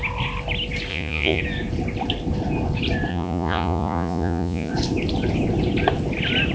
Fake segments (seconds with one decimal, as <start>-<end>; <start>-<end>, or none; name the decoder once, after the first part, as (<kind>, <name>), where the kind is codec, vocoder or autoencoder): 0.9-1.4 (vocoder, Vocos); 3.1-4.7